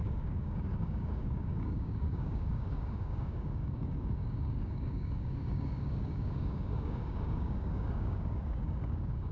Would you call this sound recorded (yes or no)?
no